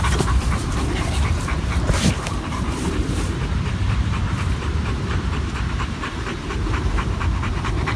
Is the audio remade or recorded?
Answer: remade